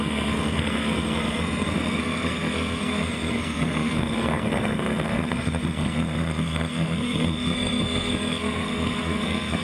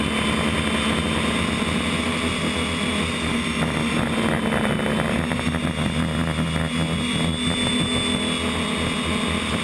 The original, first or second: second